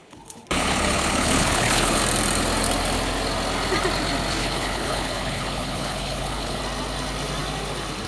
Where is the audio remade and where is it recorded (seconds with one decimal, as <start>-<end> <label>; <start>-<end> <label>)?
0.0-2.0 remade; 2.0-4.4 recorded; 4.4-6.6 remade; 6.6-8.1 recorded